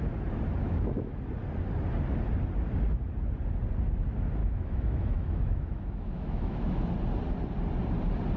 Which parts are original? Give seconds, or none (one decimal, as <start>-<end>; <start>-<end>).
0.0-0.6; 1.2-4.4; 6.9-8.4